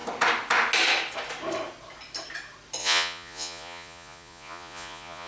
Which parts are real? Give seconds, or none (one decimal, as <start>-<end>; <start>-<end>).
0.0-2.8